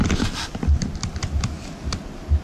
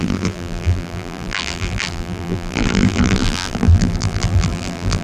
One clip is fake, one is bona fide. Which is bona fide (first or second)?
first